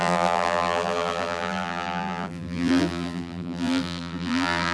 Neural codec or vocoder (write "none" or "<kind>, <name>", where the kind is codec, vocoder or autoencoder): vocoder, BigVGAN v2